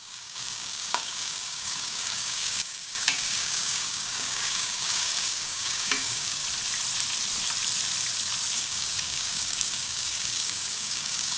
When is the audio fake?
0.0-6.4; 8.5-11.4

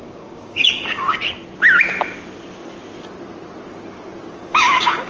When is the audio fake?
0.0-1.2; 4.3-5.1

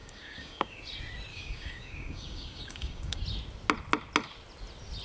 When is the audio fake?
0.0-0.8; 1.3-3.2

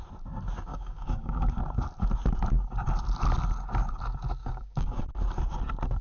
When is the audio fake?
0.7-1.6; 4.4-5.0

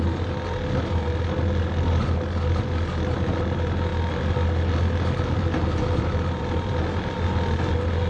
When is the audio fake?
none

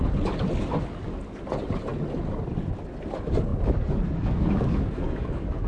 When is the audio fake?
3.5-5.7

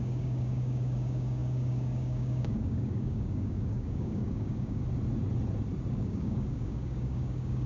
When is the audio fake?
0.0-4.8; 5.9-7.7

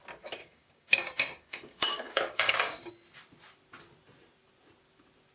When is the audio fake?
0.4-2.9